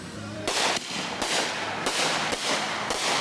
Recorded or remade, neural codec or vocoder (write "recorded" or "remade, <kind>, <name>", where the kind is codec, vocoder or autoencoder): remade, vocoder, BigVGAN v2